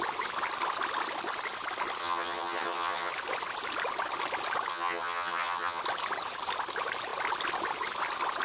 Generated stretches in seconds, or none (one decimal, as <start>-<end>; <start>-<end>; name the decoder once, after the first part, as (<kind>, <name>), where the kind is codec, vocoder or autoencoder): 2.0-3.1 (vocoder, HiFi-GAN); 4.7-5.8